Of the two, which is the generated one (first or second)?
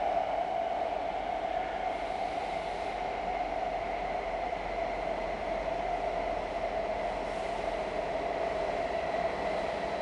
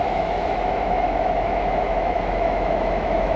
second